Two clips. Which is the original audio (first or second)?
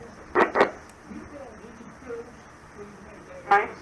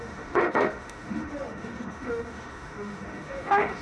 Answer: first